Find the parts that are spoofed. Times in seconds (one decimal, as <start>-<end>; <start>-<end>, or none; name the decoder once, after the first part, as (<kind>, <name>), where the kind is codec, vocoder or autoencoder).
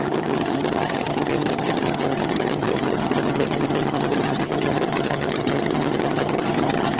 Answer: 0.0-7.0 (vocoder, HiFi-GAN)